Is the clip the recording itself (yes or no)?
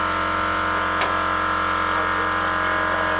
yes